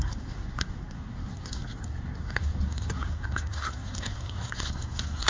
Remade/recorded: remade